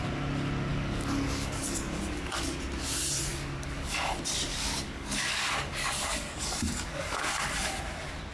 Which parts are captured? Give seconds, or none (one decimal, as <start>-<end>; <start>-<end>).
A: 0.0-0.7; 2.6-3.3; 4.1-4.5; 7.8-8.3